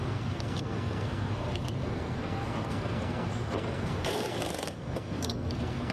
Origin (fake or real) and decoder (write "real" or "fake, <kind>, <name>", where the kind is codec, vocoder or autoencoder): fake, codec, SNAC